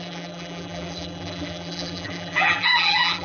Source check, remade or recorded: remade